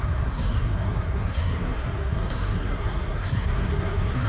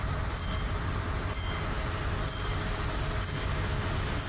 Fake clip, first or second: first